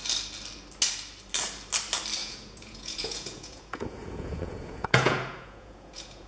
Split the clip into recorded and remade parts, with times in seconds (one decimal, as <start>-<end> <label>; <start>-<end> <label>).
0.0-2.2 recorded; 2.2-6.3 remade